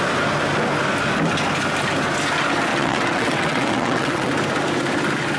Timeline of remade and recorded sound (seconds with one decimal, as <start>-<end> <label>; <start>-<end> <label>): 0.0-2.7 recorded; 2.7-4.3 remade; 4.3-5.4 recorded